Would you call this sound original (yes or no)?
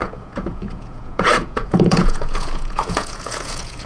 no